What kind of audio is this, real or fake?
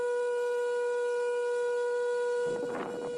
real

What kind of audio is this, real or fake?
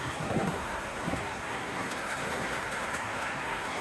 fake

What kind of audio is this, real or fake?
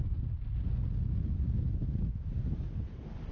real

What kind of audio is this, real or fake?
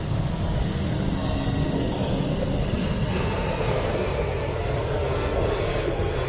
fake